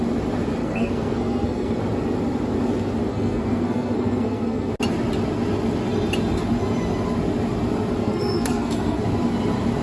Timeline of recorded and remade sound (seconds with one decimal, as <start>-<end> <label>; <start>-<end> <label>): 0.0-0.6 recorded; 0.6-1.8 remade; 1.8-3.1 recorded; 3.1-4.7 remade; 4.7-8.0 recorded; 8.0-9.0 remade; 9.0-9.8 recorded